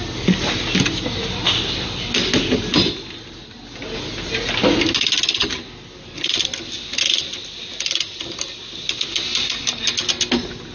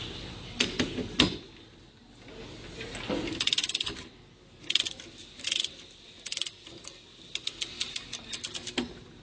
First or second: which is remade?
second